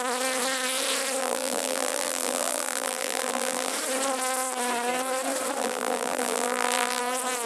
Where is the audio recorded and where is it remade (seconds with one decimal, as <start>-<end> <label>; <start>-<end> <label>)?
0.0-1.2 recorded; 1.2-3.7 remade; 3.7-5.6 recorded; 5.6-7.0 remade; 7.0-7.5 recorded